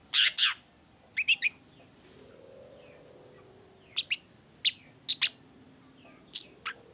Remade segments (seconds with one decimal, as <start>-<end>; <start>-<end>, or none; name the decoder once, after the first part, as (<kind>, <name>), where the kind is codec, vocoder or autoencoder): 0.0-2.3 (vocoder, BigVGAN v2)